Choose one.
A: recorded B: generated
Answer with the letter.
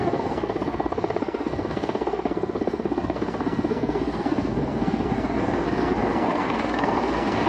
B